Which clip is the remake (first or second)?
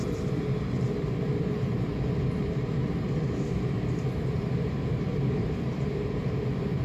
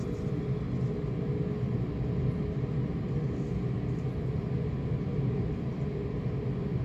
first